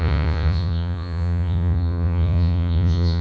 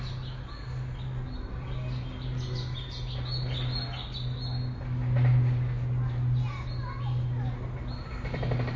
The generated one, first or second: first